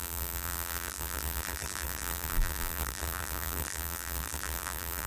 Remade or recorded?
remade